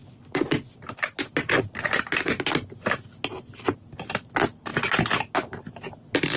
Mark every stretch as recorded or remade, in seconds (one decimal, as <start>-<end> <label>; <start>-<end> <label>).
0.0-6.4 recorded

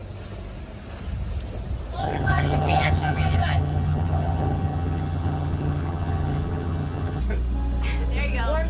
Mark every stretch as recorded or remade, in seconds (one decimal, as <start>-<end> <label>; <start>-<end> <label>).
0.0-2.0 recorded; 2.0-7.2 remade; 7.2-8.7 recorded

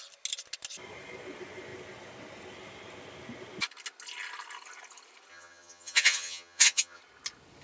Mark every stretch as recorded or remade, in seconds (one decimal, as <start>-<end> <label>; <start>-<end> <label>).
0.0-5.3 recorded; 5.3-7.0 remade; 7.0-7.6 recorded

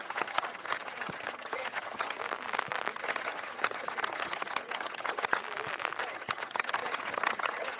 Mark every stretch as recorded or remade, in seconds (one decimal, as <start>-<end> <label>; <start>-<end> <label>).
0.0-2.2 remade; 2.2-2.9 recorded; 2.9-5.4 remade; 5.4-6.0 recorded; 6.0-7.8 remade

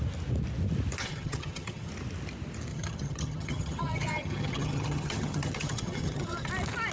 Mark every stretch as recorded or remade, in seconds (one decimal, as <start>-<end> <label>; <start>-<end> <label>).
0.0-1.0 recorded; 1.0-1.9 remade; 1.9-2.7 recorded; 2.7-6.5 remade; 6.5-6.9 recorded

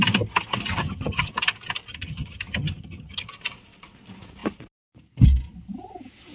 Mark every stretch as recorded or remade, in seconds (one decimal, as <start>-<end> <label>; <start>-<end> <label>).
0.0-0.7 recorded; 0.7-1.3 remade; 1.3-1.9 recorded; 1.9-3.2 remade; 3.2-6.3 recorded

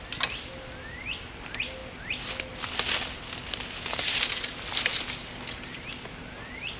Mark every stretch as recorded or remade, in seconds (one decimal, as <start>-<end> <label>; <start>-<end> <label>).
0.0-6.8 recorded

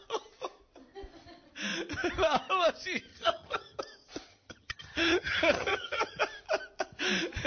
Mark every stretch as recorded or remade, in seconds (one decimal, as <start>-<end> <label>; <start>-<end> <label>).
0.0-3.1 recorded; 3.1-3.8 remade; 3.8-4.3 recorded; 4.3-6.2 remade; 6.2-7.5 recorded